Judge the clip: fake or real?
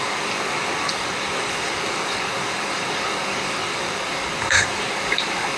fake